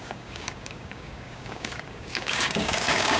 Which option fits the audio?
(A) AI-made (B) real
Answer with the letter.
A